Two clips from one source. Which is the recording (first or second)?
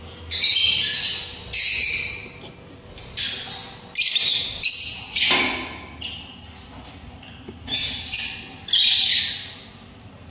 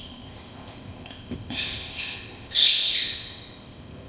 first